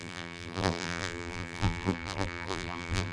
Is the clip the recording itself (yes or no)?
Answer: no